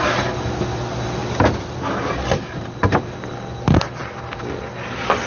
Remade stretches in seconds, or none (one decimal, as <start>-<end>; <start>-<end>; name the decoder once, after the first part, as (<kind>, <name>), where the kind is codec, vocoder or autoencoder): none